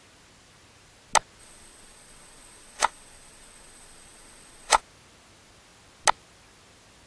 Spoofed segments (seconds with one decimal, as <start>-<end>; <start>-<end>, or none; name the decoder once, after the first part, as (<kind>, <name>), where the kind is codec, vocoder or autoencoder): 1.4-4.8 (vocoder, Vocos)